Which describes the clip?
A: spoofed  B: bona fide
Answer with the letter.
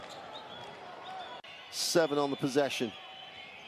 B